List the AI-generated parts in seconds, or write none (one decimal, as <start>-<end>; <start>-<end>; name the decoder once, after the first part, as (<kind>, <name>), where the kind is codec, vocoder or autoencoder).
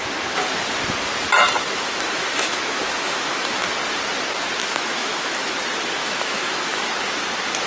1.6-3.7 (autoencoder, DAC-VAE); 4.6-5.5; 6.0-6.9